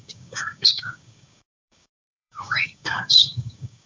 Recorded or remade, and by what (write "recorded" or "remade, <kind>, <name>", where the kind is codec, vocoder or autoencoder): remade, codec, DAC